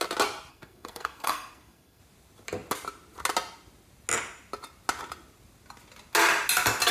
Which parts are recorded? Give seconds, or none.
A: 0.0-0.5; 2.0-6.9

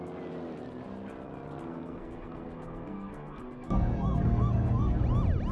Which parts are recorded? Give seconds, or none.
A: 0.0-1.7; 5.0-5.5

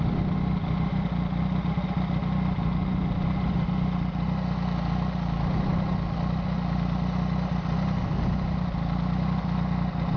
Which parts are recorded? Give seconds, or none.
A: 0.0-10.2

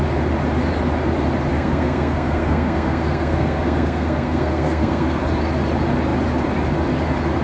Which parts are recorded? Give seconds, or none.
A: 0.0-1.5; 5.2-7.4

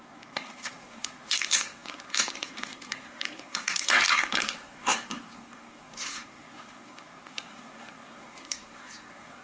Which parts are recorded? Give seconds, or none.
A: none

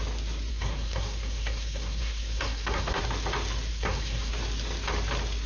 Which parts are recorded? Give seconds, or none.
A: 0.0-0.5; 3.0-3.7; 4.3-5.5